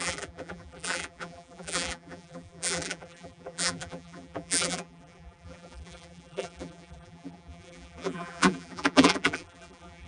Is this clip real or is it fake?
fake